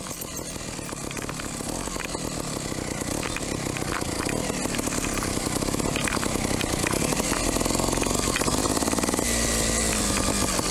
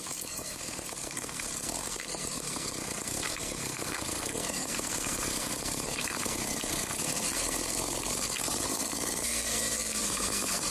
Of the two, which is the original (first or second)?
first